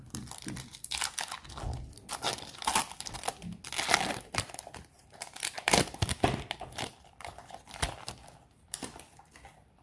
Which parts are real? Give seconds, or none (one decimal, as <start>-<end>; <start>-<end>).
0.7-3.9; 5.0-8.4